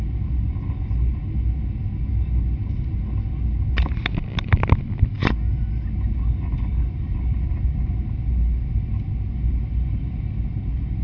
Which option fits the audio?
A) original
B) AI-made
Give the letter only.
A